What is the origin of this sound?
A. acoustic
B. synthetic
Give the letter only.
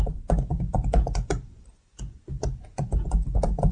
B